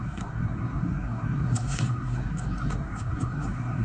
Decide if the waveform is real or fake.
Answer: fake